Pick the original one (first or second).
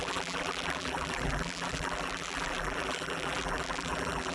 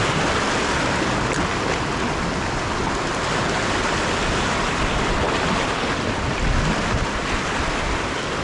second